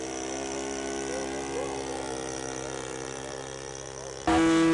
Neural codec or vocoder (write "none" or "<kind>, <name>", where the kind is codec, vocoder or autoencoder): none